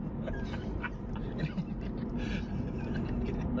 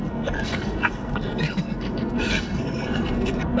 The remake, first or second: second